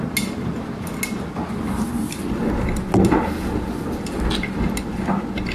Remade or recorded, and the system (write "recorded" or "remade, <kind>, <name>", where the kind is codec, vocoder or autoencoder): recorded